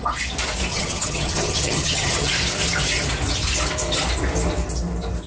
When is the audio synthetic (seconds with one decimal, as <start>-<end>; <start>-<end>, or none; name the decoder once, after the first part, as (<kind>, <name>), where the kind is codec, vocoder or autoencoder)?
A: 0.7-2.3 (vocoder, HiFi-GAN)

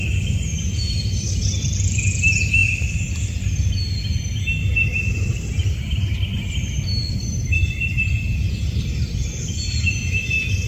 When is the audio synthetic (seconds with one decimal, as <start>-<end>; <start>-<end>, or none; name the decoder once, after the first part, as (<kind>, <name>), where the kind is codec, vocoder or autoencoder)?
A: 7.2-8.0 (vocoder, BigVGAN v2)